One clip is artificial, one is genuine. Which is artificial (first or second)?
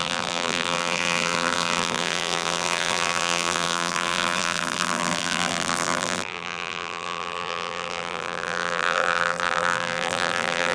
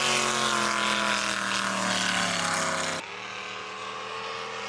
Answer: first